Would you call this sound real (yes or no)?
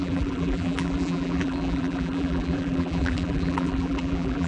no